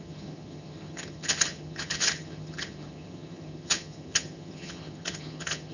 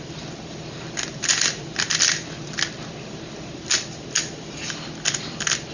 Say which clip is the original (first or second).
second